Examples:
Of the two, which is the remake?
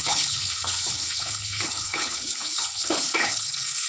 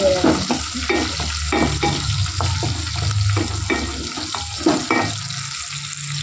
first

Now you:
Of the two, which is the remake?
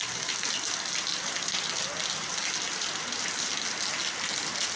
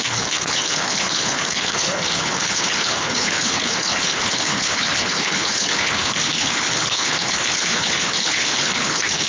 second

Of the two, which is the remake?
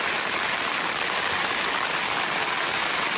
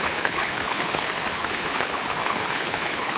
second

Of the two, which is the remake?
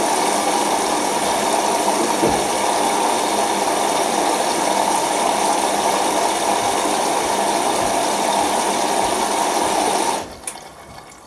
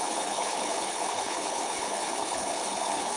second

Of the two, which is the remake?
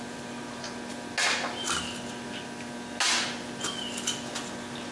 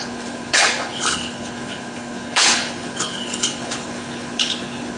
second